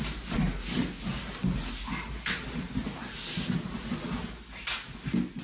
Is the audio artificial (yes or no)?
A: no